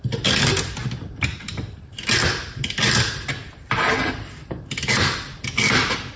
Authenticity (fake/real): real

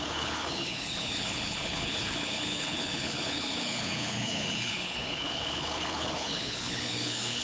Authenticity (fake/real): fake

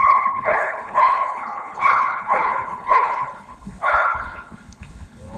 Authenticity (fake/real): fake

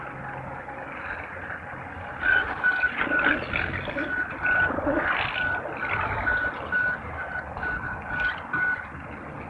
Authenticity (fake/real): real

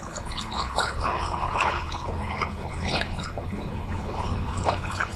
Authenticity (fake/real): fake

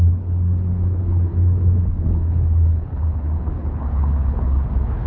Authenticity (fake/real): fake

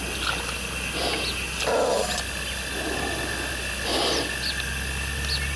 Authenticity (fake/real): real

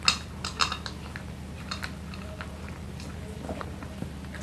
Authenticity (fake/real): real